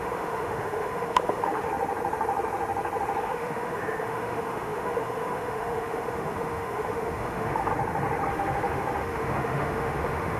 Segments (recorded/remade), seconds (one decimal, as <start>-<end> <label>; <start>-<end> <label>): 0.0-1.7 remade; 1.7-3.2 recorded; 3.2-7.7 remade; 7.7-8.3 recorded; 8.3-10.4 remade